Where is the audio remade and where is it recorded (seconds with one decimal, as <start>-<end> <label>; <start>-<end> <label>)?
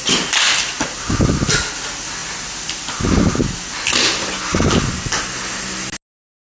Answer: 0.0-6.5 recorded